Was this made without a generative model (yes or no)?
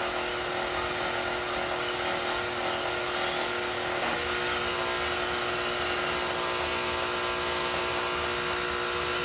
yes